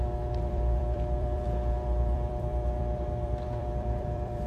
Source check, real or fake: fake